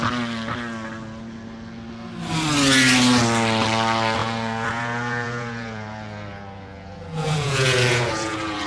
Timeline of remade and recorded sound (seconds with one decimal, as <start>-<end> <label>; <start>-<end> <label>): 0.0-4.2 recorded; 4.2-8.7 remade